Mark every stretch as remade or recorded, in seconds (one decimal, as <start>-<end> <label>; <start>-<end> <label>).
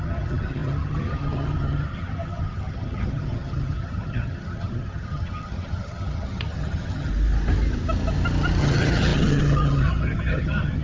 0.0-7.1 remade; 7.1-8.6 recorded; 8.6-10.8 remade